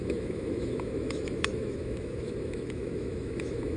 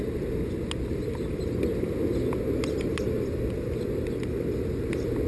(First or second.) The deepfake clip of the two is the first